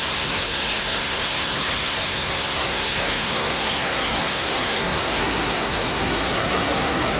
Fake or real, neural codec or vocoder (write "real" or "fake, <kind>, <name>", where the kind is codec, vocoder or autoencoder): fake, codec, SNAC